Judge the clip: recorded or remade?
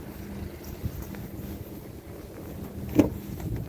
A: recorded